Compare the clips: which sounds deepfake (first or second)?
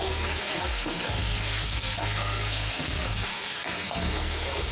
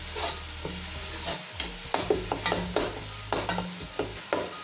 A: first